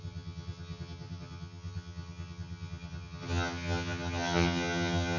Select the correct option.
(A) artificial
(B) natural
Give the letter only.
A